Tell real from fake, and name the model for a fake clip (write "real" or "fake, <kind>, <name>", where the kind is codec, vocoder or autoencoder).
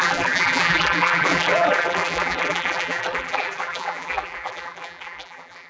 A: fake, vocoder, BigVGAN v2